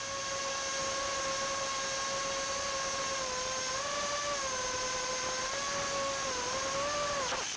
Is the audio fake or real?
real